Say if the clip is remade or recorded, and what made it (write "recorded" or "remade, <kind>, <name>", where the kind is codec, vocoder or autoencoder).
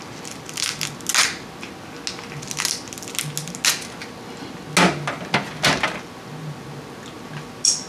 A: recorded